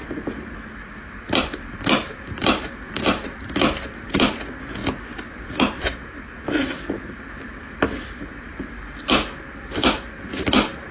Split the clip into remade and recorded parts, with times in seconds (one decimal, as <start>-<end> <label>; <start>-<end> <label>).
0.0-0.5 remade; 0.5-2.4 recorded; 2.4-3.7 remade; 3.7-10.9 recorded